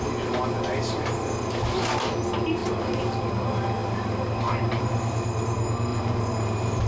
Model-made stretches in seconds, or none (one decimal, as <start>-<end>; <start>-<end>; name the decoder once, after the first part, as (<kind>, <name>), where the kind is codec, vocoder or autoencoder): 2.6-3.2 (vocoder, BigVGAN v2); 3.8-4.9; 5.9-6.9